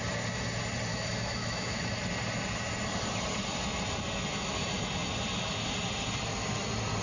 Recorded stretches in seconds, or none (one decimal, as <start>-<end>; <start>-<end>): 0.0-0.9; 1.8-7.0